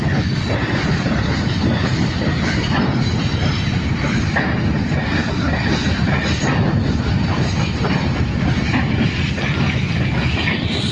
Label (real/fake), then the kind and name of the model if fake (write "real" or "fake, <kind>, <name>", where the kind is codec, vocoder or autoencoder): real